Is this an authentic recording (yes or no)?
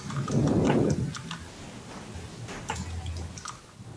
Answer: yes